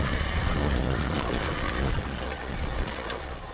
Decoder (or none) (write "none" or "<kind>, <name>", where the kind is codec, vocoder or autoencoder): vocoder, Vocos